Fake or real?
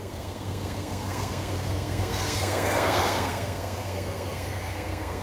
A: fake